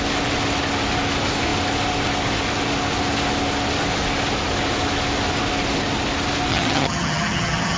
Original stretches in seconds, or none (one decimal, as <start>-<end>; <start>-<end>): 0.0-6.5